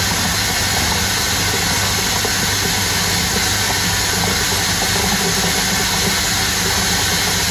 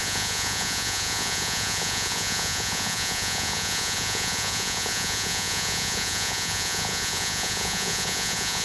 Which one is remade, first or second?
second